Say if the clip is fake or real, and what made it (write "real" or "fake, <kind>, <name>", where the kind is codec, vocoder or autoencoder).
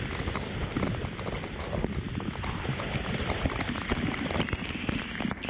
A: real